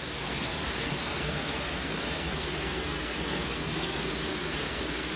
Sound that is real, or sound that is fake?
fake